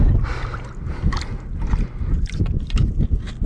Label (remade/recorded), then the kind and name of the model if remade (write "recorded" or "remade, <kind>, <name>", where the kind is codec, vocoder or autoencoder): recorded